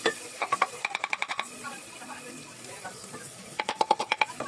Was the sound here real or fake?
fake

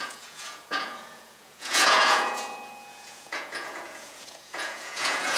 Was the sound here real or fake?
fake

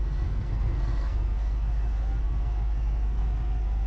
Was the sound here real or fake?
fake